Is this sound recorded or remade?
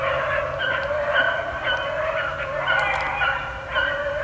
recorded